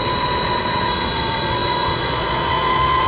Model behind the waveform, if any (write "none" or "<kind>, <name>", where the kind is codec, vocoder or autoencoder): vocoder, Vocos